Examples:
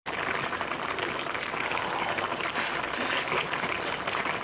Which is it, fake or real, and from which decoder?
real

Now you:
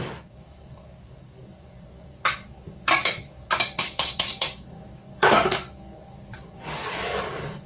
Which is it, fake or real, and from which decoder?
fake, codec, DAC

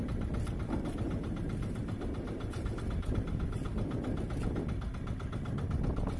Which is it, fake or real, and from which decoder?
real